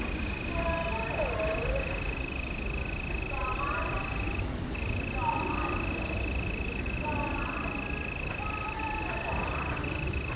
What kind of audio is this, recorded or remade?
recorded